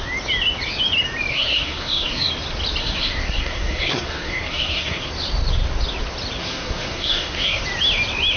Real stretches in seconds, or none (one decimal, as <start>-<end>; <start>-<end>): 0.0-1.3; 2.3-2.8; 5.1-6.4; 7.6-8.4

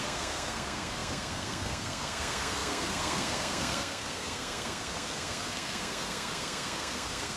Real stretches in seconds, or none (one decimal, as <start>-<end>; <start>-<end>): none

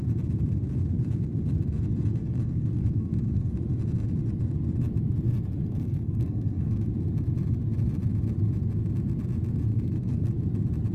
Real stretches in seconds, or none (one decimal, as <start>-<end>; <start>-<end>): 0.0-2.2; 3.5-5.6; 6.9-9.7; 10.3-10.9

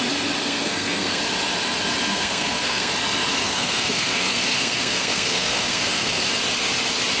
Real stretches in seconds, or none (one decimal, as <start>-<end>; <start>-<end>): 0.0-0.4; 1.2-2.1; 2.9-3.4; 6.3-7.2

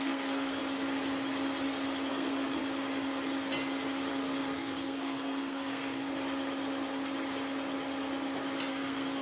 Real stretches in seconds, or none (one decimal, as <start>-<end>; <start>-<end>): 0.6-2.1; 2.6-4.1; 6.1-8.7

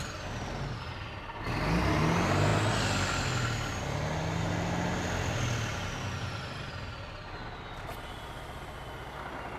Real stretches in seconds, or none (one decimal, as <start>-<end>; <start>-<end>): 0.0-9.6

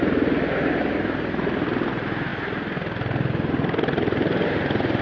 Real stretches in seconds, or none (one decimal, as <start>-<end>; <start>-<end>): 0.0-5.0

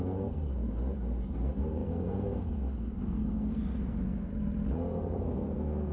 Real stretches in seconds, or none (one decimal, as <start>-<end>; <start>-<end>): 0.5-1.2; 4.3-5.2